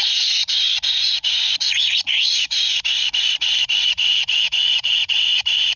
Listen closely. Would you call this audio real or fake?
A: fake